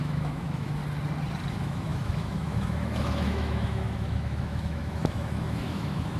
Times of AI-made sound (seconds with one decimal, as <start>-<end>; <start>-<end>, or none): 0.0-0.8; 1.5-6.2